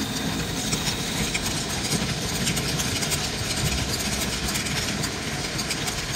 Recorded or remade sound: recorded